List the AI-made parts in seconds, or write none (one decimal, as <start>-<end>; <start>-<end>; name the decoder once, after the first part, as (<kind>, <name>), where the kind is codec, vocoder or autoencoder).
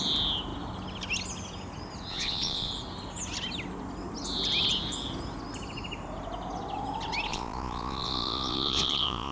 2.1-2.7 (vocoder, Vocos); 7.3-9.3